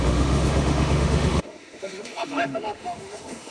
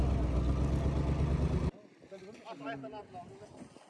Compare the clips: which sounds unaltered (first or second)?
second